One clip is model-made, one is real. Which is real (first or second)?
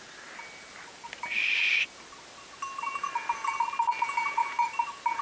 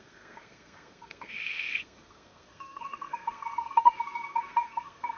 first